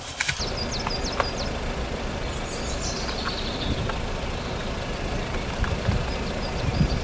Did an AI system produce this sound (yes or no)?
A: no